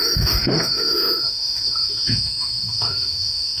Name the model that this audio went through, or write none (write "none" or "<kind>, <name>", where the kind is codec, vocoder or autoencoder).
autoencoder, DAC-VAE